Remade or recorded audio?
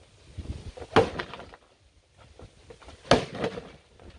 recorded